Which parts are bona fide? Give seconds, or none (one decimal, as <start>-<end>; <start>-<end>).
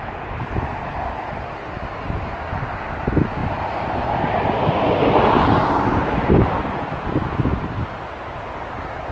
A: 0.0-3.4; 5.9-9.1